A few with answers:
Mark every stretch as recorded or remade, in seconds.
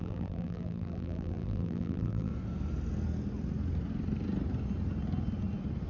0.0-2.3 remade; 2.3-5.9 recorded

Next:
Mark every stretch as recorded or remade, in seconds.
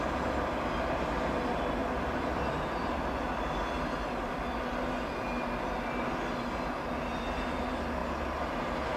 0.0-8.0 recorded; 8.0-9.0 remade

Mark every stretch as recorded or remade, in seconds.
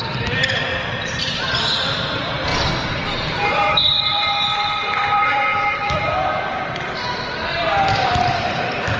0.0-2.5 remade; 2.5-3.5 recorded; 3.5-9.0 remade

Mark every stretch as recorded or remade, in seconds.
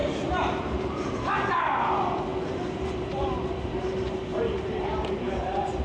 0.0-4.3 recorded; 4.3-5.3 remade; 5.3-5.8 recorded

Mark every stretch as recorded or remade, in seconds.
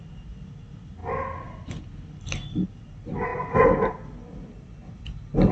0.0-5.5 recorded